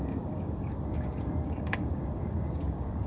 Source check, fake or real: fake